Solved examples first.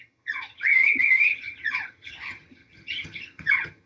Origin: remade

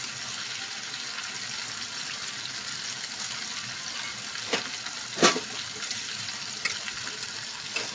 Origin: recorded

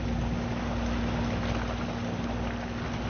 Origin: recorded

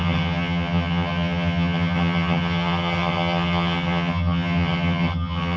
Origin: remade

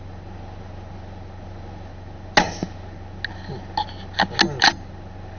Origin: recorded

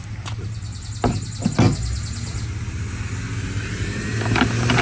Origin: recorded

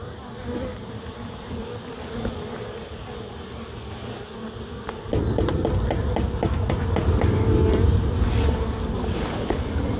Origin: recorded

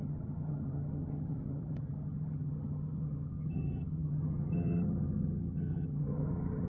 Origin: remade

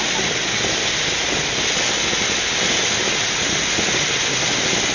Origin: recorded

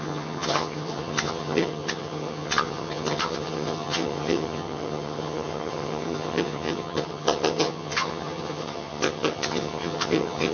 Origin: remade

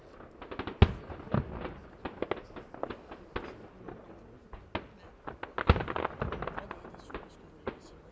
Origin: recorded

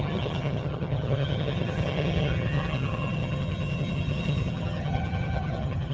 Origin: remade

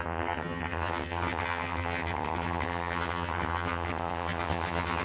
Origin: remade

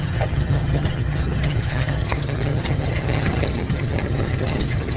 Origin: remade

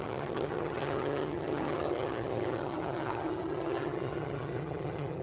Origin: remade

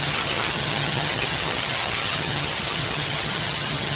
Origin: remade